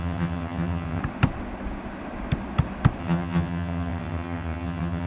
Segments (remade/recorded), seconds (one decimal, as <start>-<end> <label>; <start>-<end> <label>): 0.0-1.0 remade; 1.0-3.0 recorded; 3.0-5.1 remade